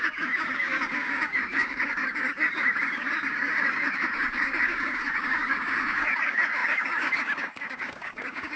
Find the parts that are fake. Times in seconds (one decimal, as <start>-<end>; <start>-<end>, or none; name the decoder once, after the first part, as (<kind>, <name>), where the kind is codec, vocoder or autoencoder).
0.0-8.6 (codec, DAC)

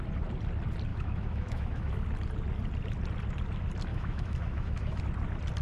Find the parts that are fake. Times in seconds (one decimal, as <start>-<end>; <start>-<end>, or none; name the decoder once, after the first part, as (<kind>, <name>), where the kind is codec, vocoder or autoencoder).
0.9-1.9 (autoencoder, DAC-VAE); 3.9-5.0

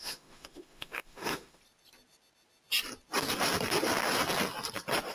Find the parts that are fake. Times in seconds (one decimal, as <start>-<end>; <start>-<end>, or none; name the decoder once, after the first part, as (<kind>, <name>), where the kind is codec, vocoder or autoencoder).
0.0-1.6 (autoencoder, DAC-VAE)

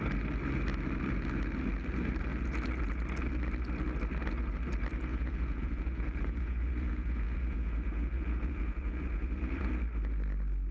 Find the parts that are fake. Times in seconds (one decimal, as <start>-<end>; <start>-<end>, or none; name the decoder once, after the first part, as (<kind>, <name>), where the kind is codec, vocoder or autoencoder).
5.1-9.7 (vocoder, Vocos)